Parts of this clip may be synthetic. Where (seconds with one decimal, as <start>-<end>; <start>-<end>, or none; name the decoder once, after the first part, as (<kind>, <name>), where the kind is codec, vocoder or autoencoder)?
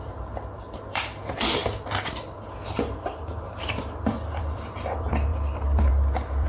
0.0-1.6 (vocoder, BigVGAN v2); 4.4-6.5